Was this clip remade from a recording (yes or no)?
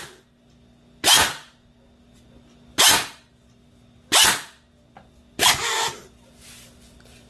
no